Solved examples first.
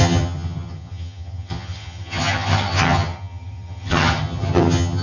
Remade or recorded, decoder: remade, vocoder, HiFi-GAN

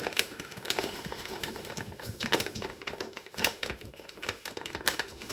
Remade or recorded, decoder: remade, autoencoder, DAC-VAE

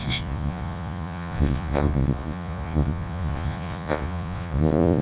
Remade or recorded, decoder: remade, vocoder, Vocos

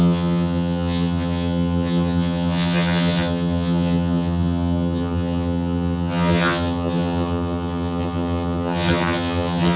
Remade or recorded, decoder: remade, vocoder, HiFi-GAN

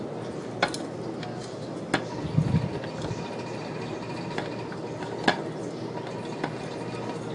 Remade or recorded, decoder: recorded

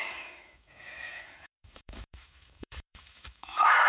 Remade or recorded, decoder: remade, autoencoder, DAC-VAE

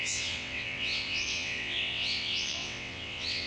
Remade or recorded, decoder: remade, vocoder, WaveNeXt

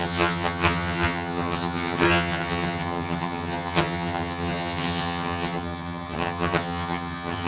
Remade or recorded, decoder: remade, vocoder, HiFi-GAN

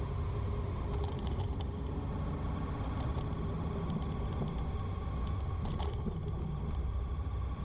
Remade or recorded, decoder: recorded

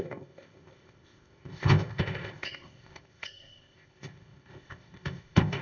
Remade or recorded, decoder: remade, codec, ZipCodec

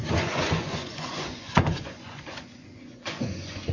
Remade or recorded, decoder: remade, vocoder, Vocos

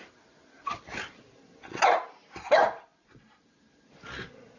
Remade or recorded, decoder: recorded